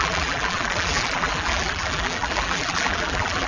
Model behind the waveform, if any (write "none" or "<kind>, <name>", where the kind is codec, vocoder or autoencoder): vocoder, BigVGAN v2